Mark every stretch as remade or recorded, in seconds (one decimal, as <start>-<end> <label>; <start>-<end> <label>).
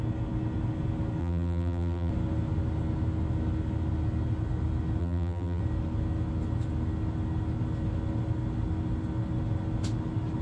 0.0-1.2 recorded; 1.2-2.1 remade; 2.1-5.0 recorded; 5.0-5.6 remade; 5.6-10.4 recorded